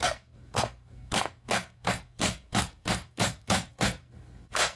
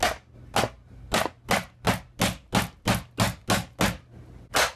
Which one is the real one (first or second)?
second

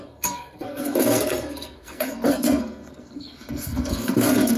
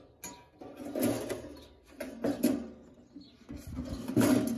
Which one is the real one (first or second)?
second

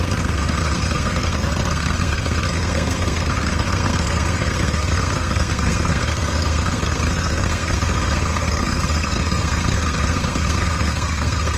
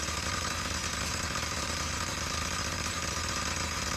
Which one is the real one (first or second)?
second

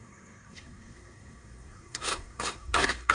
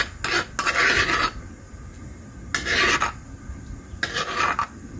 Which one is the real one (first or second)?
second